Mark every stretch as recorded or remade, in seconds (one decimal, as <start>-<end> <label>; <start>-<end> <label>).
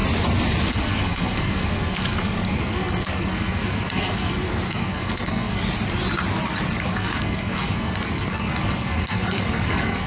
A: 0.0-0.7 recorded; 0.7-5.6 remade; 5.6-6.8 recorded; 6.8-10.1 remade